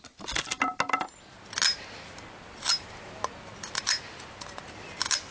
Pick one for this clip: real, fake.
real